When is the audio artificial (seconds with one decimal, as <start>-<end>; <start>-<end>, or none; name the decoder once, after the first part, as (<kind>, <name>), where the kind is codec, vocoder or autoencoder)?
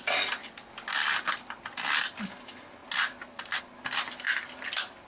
0.4-1.1 (vocoder, BigVGAN v2); 2.8-3.6; 4.3-5.1